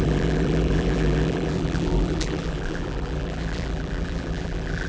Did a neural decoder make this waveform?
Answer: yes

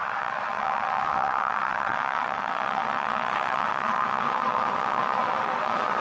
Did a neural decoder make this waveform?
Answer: yes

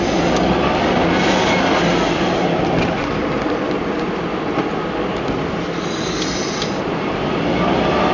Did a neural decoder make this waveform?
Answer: no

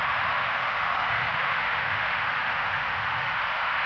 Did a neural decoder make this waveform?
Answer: yes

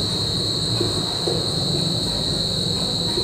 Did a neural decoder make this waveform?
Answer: yes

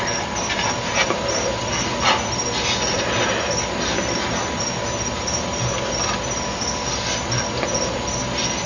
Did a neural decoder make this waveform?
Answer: no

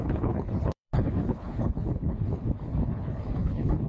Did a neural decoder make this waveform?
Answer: yes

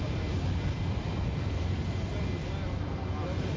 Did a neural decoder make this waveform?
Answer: yes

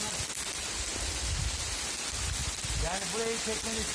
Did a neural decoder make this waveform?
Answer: no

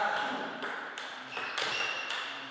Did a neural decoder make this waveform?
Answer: no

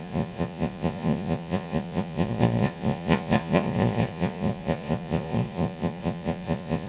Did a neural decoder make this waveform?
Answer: yes